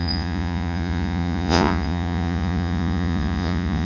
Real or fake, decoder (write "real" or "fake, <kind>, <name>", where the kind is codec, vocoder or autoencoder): fake, vocoder, Vocos